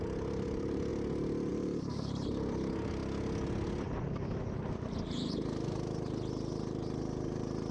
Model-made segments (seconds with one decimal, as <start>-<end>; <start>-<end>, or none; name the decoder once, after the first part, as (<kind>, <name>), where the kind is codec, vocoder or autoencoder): 0.0-0.9 (vocoder, BigVGAN v2); 1.5-3.0